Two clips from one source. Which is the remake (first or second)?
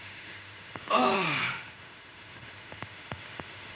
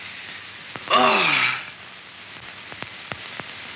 first